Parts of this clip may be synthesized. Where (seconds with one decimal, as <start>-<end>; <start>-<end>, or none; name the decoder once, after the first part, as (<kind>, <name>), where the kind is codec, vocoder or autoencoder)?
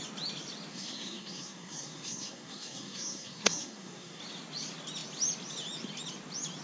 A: 0.7-4.2 (codec, SNAC)